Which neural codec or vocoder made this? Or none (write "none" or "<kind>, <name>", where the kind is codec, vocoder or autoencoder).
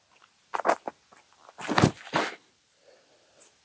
none